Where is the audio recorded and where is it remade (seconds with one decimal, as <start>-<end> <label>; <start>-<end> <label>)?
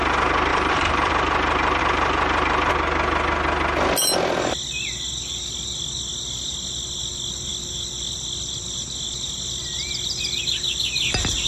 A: 0.0-0.5 recorded; 0.5-1.1 remade; 1.1-11.5 recorded